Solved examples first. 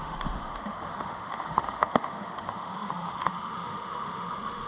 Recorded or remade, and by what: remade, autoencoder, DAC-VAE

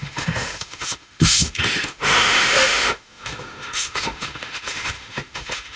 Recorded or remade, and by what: remade, autoencoder, DAC-VAE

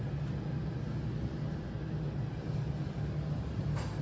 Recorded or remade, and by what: recorded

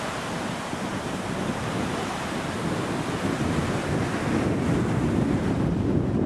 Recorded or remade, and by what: recorded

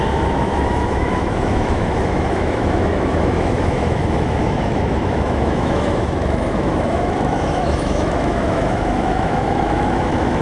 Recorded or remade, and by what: remade, autoencoder, DAC-VAE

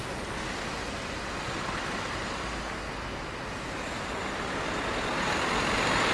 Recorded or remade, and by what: recorded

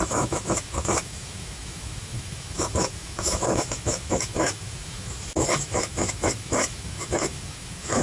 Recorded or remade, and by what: remade, autoencoder, DAC-VAE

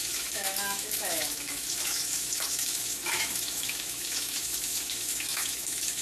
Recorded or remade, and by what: remade, autoencoder, DAC-VAE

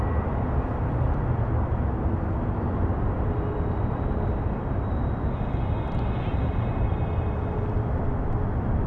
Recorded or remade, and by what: recorded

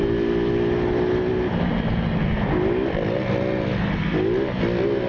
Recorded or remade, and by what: recorded